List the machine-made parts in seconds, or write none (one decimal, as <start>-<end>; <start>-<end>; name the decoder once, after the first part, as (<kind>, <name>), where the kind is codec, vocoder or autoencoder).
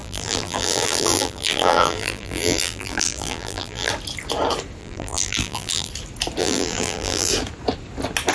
0.0-3.9 (vocoder, BigVGAN v2); 4.8-5.9; 6.4-7.3